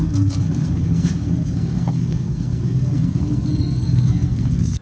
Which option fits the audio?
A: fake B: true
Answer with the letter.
A